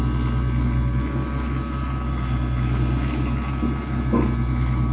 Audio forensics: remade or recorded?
recorded